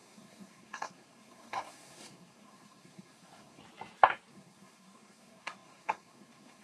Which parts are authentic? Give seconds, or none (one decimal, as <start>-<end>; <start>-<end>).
3.6-4.3